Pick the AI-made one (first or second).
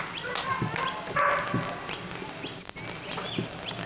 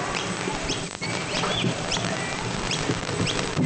second